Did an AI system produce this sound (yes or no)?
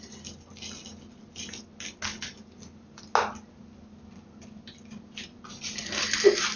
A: no